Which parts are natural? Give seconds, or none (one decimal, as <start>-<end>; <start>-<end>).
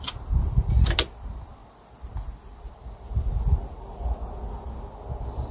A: 0.0-5.5